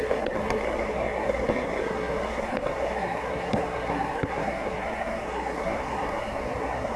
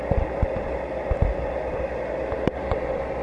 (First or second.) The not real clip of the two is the first